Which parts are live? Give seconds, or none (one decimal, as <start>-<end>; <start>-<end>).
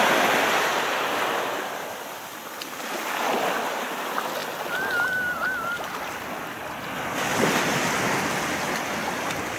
0.0-9.6